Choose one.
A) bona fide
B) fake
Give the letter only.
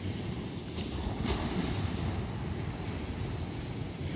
A